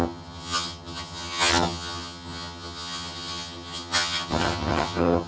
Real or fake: fake